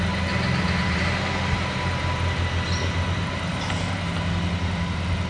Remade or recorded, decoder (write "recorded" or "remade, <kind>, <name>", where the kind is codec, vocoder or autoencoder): recorded